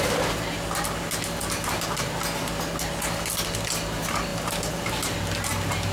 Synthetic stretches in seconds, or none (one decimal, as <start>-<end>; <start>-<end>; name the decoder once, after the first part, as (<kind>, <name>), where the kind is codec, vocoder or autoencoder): 4.3-4.9 (vocoder, BigVGAN v2)

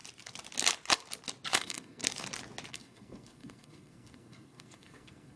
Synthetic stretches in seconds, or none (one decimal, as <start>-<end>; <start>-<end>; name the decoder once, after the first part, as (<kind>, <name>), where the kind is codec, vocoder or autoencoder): 1.6-2.0 (codec, SNAC); 2.7-5.4

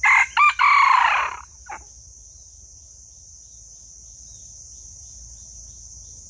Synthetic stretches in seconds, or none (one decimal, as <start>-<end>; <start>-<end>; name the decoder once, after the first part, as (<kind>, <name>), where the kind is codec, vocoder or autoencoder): none